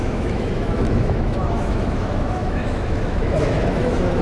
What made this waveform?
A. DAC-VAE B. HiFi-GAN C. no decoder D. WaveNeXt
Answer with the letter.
A